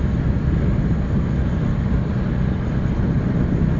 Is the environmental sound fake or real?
real